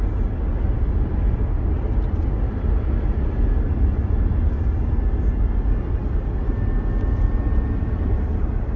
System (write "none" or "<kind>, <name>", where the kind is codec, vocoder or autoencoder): none